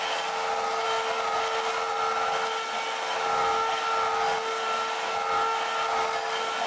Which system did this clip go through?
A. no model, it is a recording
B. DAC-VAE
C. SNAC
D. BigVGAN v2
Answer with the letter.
A